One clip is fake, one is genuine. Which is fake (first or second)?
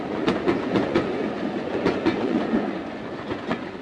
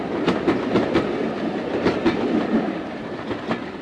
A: first